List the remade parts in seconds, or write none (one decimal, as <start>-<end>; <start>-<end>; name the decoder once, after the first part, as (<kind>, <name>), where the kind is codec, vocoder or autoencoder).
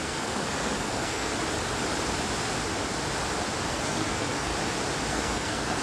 0.0-1.3 (codec, SNAC); 3.7-4.5; 5.1-5.8